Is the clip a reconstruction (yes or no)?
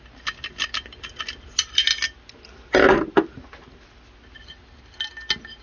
no